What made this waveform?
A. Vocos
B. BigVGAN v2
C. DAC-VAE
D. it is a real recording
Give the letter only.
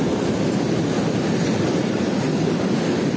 B